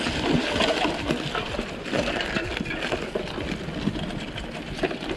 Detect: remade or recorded recorded